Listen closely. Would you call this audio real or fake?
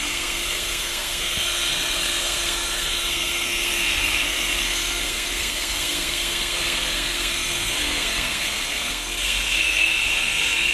fake